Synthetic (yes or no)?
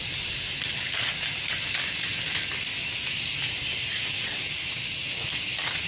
no